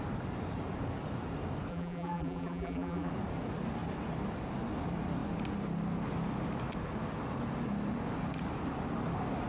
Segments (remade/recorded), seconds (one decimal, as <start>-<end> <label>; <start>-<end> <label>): 0.0-1.7 recorded; 1.7-3.1 remade; 3.1-9.5 recorded